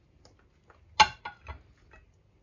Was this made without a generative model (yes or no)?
yes